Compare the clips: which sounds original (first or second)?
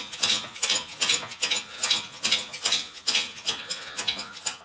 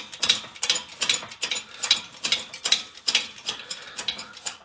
second